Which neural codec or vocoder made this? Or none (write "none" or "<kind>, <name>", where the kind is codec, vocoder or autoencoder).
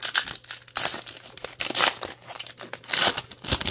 none